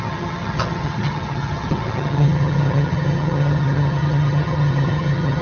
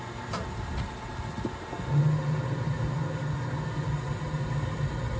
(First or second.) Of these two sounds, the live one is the second